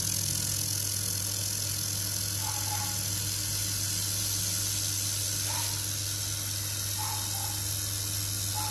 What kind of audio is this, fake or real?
real